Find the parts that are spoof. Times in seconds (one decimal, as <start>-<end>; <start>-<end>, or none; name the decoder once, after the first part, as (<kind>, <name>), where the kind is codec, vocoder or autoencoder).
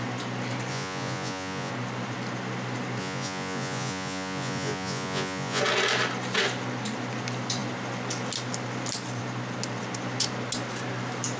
0.7-1.7 (vocoder, Vocos); 3.0-5.6